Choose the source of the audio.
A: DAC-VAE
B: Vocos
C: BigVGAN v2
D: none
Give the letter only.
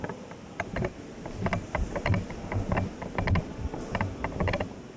D